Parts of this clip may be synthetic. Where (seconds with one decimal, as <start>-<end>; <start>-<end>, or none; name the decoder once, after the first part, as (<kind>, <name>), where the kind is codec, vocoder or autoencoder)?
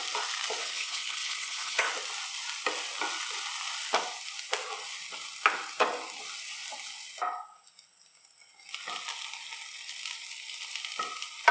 0.6-1.9 (codec, HILCodec)